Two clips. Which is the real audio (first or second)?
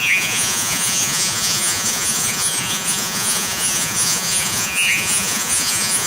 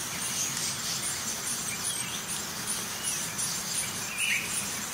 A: second